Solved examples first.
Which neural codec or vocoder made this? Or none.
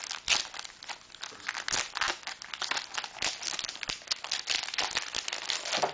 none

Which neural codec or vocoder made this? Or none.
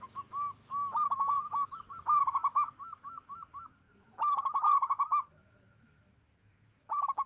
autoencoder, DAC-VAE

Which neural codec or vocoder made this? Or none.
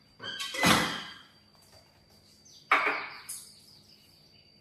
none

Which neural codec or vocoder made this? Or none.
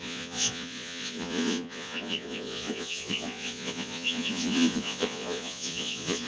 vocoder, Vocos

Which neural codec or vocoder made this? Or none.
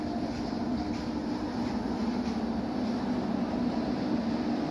none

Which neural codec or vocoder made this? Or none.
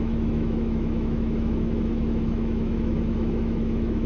autoencoder, DAC-VAE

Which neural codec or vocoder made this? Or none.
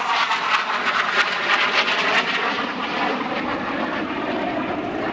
none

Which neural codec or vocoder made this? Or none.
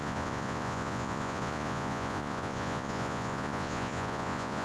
vocoder, Vocos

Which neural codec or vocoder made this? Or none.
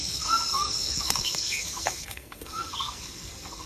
codec, SNAC